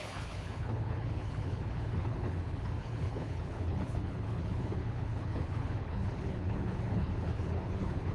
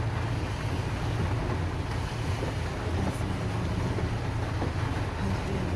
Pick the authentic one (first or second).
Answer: second